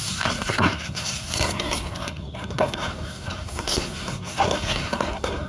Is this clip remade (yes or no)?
yes